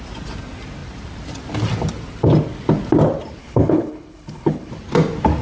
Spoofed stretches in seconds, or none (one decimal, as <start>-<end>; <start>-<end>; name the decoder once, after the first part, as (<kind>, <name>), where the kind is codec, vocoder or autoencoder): 3.4-4.7 (codec, HILCodec)